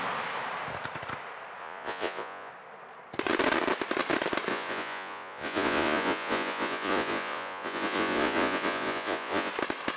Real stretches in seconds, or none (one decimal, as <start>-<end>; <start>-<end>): 0.0-1.6; 2.5-4.5; 9.5-10.0